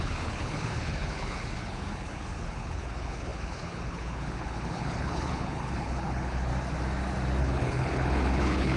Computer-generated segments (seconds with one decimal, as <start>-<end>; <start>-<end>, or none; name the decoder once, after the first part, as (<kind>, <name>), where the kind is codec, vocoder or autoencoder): 0.0-6.5 (codec, HILCodec); 7.4-8.8